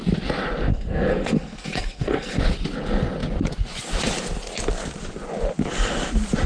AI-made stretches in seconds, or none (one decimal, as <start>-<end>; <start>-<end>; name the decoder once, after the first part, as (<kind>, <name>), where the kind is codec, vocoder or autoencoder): 0.7-2.4 (codec, SNAC)